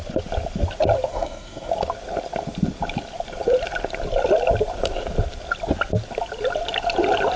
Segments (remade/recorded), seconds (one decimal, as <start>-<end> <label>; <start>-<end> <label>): 0.0-1.1 recorded; 1.1-1.7 remade; 1.7-7.4 recorded